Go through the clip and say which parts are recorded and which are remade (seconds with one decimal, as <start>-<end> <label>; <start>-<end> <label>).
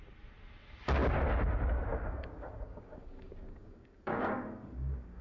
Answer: 0.0-1.9 recorded; 1.9-5.2 remade